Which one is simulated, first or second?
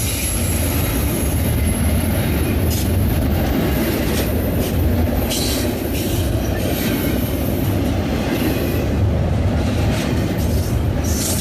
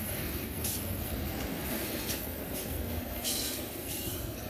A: second